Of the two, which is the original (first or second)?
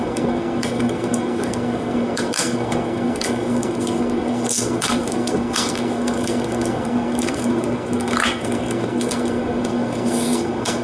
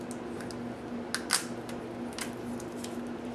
second